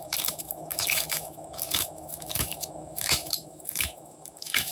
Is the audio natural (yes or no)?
no